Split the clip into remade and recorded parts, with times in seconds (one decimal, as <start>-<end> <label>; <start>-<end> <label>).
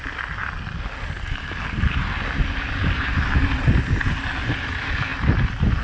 0.0-5.8 recorded